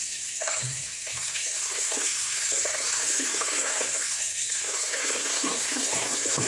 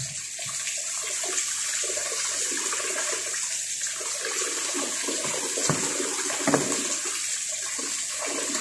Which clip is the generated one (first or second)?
first